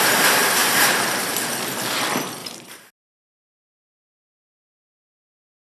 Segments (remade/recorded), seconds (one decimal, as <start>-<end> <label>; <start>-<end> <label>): 0.0-0.6 recorded; 0.6-1.3 remade; 1.3-2.4 recorded; 2.4-3.2 remade; 3.2-5.6 recorded